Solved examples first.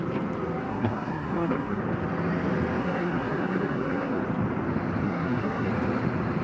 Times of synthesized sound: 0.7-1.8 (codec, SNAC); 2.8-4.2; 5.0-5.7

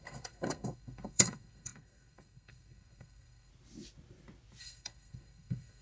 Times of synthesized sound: 0.0-3.5 (codec, SNAC); 4.6-5.8